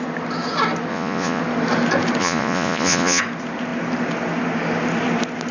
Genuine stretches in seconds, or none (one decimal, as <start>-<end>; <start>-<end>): 0.0-0.9; 1.4-2.2; 3.2-5.5